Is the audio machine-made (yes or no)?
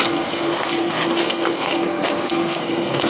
yes